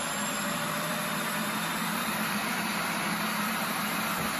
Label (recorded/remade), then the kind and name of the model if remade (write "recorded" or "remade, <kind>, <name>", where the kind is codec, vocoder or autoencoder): remade, vocoder, BigVGAN v2